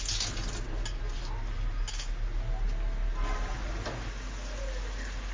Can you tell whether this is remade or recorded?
recorded